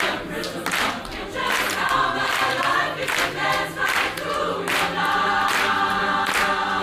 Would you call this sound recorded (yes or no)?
yes